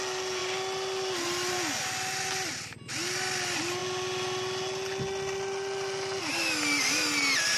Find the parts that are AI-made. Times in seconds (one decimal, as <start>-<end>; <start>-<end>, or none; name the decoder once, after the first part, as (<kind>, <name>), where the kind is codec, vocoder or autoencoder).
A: none